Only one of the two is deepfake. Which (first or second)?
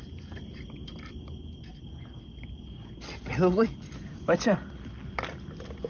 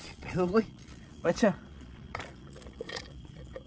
second